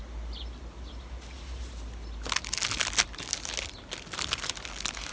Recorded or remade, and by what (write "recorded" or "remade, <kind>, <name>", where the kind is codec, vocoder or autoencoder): recorded